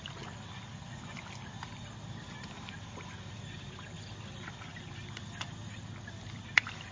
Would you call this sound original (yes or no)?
yes